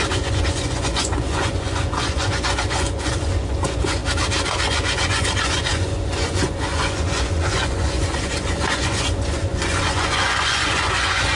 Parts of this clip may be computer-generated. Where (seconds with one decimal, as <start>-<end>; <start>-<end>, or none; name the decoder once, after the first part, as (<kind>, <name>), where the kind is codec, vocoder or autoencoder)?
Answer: 0.0-4.0 (vocoder, Vocos); 4.6-11.3